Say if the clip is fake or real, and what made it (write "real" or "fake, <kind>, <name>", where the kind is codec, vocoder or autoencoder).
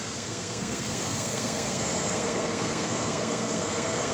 fake, codec, SNAC